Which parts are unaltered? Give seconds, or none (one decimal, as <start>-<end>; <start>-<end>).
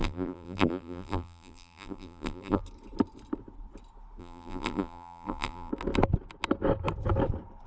2.6-4.2; 5.7-7.7